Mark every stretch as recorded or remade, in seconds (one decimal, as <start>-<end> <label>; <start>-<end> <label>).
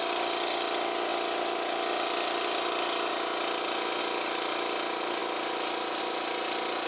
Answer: 0.0-6.9 recorded